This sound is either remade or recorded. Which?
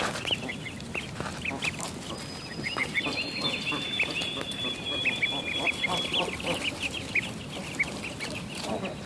recorded